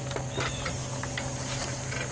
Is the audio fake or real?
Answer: real